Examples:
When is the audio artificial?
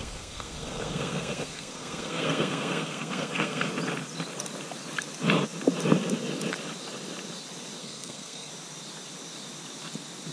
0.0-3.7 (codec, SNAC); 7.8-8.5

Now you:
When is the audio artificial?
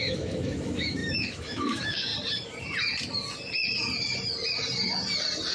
0.0-2.1 (autoencoder, DAC-VAE)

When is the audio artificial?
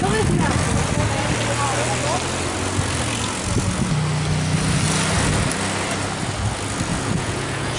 6.9-7.8 (vocoder, Vocos)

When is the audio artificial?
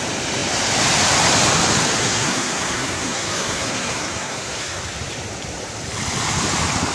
2.0-4.8 (codec, SNAC)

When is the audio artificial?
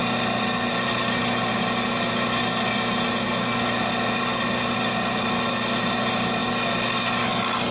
none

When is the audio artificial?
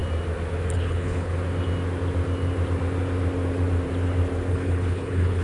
0.7-1.3 (codec, HILCodec); 4.5-5.4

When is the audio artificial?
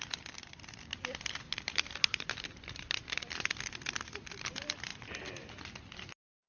0.0-6.5 (vocoder, BigVGAN v2)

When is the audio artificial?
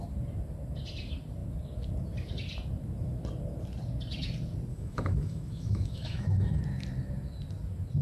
4.7-6.6 (autoencoder, DAC-VAE)